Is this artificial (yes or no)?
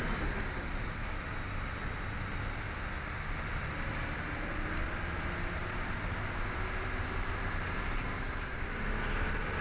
no